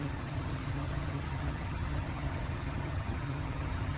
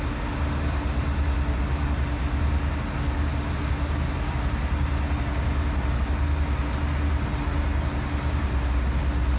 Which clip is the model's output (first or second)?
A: first